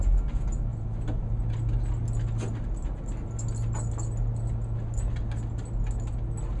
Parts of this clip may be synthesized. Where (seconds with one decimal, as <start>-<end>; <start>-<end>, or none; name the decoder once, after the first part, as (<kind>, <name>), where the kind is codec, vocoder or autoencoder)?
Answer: none